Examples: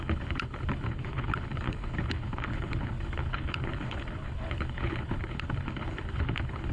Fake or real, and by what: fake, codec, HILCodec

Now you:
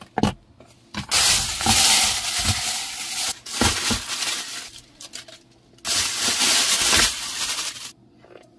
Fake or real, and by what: real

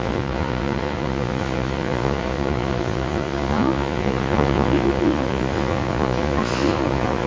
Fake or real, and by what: fake, vocoder, Vocos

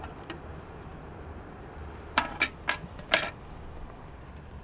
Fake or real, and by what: fake, vocoder, BigVGAN v2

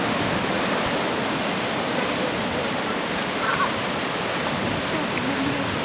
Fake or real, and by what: real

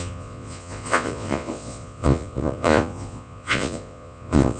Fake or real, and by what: fake, vocoder, Vocos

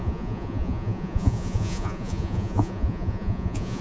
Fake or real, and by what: fake, vocoder, Vocos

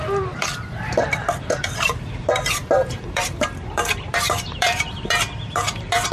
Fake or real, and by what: fake, vocoder, BigVGAN v2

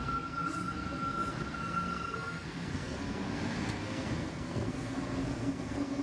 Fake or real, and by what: fake, codec, SNAC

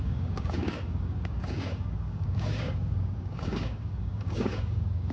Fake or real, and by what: fake, codec, DAC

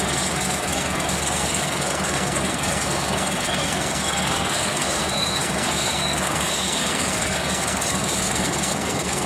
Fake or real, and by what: fake, codec, SNAC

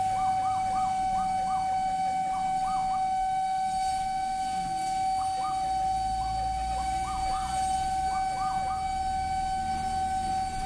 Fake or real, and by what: real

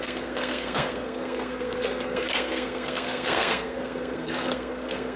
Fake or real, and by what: fake, codec, SNAC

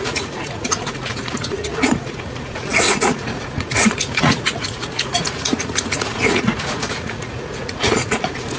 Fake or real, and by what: fake, vocoder, Vocos